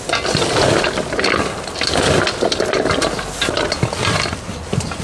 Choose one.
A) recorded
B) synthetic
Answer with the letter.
A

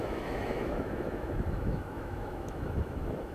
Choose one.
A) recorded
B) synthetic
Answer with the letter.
B